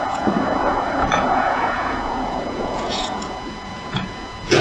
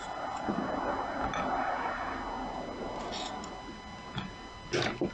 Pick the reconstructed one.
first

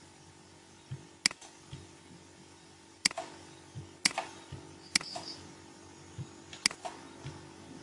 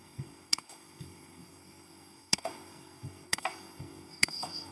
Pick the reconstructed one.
second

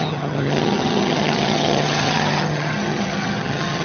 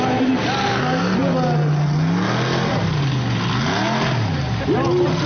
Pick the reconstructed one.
first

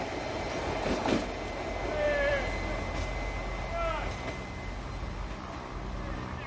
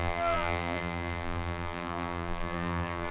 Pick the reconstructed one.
second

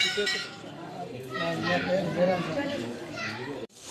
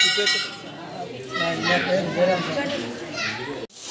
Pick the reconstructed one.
first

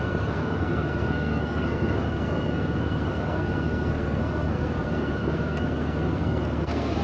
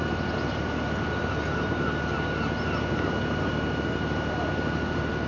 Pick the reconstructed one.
first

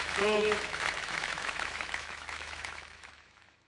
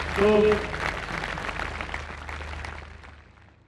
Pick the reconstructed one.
first